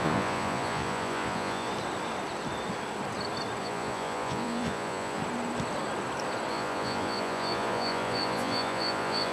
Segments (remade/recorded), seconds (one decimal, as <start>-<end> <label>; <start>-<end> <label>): 0.0-1.7 remade; 1.7-3.6 recorded; 3.6-5.2 remade; 5.2-6.5 recorded; 6.5-9.3 remade